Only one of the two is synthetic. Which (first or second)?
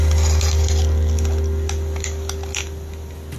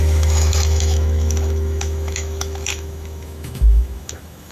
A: second